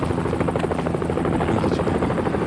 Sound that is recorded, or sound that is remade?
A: recorded